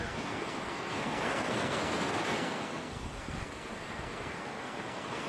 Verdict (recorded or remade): remade